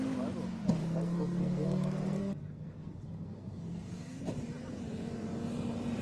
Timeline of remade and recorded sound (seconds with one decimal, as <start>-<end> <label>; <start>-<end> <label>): 0.0-0.8 recorded; 0.8-4.2 remade; 4.2-6.0 recorded